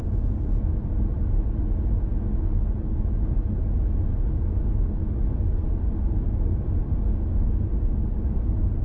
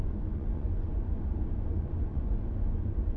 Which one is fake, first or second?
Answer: second